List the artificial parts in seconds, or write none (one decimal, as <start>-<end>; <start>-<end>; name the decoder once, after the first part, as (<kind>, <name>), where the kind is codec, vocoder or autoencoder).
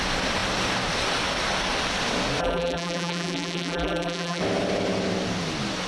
2.4-4.4 (vocoder, BigVGAN v2)